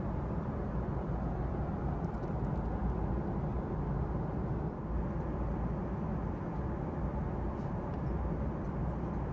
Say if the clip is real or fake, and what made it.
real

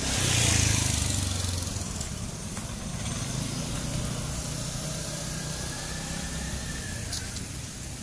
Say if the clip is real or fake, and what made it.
real